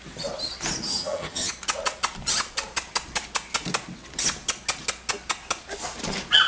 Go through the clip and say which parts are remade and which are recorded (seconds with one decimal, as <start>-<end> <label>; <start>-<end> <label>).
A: 0.0-0.9 recorded; 0.9-1.5 remade; 1.5-6.5 recorded